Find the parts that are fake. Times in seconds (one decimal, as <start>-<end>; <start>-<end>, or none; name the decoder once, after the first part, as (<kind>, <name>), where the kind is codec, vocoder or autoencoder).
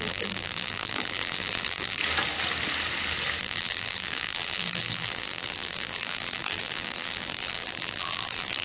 0.0-2.0 (vocoder, BigVGAN v2); 3.4-8.6